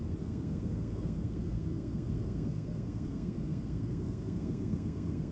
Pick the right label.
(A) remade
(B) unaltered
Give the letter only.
A